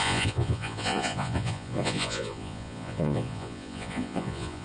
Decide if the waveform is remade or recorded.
remade